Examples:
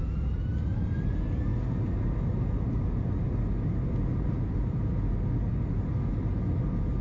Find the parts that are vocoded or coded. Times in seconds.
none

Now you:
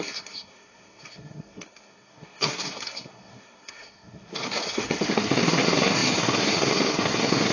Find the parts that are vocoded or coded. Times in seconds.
0.0-7.5